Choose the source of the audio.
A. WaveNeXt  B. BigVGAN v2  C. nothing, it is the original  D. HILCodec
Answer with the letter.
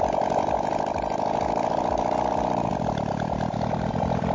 C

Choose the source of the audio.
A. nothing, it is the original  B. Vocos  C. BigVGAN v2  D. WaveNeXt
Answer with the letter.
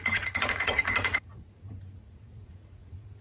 B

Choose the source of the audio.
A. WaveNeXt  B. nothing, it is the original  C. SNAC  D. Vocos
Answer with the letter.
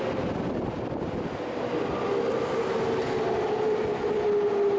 B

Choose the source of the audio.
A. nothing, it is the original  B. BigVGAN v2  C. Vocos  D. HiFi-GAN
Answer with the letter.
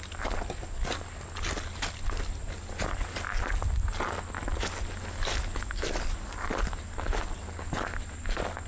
A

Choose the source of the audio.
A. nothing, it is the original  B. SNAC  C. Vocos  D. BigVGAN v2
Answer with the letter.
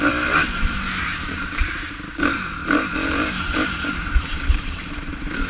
D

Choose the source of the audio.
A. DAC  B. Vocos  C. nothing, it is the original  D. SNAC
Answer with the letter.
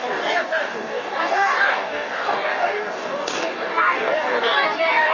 A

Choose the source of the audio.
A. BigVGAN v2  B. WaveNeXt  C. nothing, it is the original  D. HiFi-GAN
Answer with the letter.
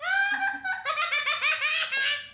C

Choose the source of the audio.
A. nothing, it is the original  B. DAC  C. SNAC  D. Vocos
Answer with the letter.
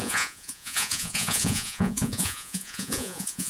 D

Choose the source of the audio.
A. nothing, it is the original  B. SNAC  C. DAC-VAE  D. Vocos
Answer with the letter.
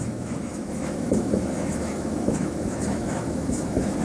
C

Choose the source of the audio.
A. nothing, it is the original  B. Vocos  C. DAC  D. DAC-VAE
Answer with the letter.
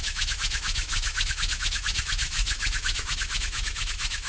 D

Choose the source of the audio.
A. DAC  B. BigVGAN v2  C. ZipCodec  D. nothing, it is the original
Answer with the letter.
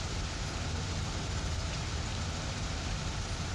D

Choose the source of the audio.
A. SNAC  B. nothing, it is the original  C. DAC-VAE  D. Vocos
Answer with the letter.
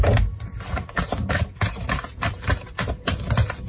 B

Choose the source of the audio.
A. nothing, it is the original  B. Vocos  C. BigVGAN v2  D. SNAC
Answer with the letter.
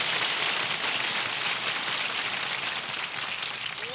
A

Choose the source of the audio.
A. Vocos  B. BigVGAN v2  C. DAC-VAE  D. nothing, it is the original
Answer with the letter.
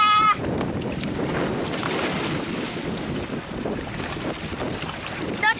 D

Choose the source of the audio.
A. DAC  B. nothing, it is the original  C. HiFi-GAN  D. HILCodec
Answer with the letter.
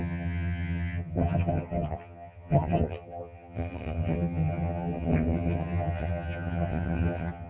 C